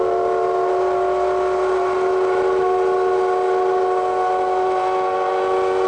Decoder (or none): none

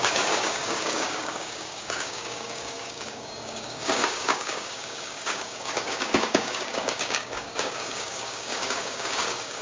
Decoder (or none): codec, DAC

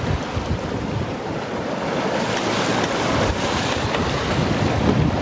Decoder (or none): none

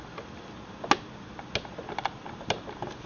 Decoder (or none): none